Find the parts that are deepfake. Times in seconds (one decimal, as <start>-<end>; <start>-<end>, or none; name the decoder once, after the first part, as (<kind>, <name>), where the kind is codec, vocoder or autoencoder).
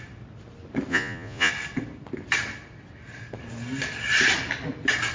0.9-1.5 (vocoder, Vocos)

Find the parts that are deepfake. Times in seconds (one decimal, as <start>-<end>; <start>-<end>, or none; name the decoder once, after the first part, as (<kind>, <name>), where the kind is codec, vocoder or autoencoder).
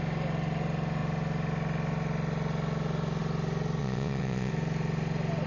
3.8-4.5 (vocoder, WaveNeXt)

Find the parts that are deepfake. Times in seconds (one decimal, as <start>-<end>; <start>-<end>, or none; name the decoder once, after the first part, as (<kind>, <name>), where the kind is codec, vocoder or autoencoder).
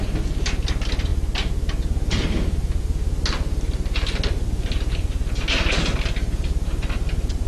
none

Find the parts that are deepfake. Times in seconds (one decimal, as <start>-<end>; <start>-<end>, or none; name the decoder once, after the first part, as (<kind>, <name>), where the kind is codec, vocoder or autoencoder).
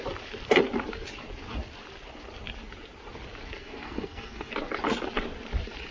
3.6-4.5 (codec, SNAC)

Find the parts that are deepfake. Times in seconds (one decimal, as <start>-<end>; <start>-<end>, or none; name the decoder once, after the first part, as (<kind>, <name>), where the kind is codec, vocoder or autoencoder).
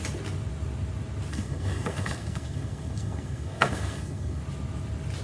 1.3-4.4 (codec, SNAC)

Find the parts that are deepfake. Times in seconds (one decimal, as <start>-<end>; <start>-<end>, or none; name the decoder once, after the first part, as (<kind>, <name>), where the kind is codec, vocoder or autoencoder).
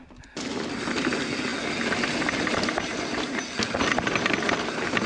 none